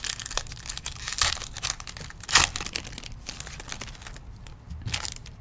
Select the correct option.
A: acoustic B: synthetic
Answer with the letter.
A